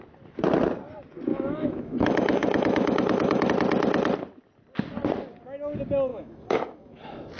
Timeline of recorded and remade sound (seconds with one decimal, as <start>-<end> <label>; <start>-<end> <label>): 0.0-1.3 recorded; 1.3-3.5 remade; 3.5-6.1 recorded; 6.1-7.0 remade; 7.0-7.4 recorded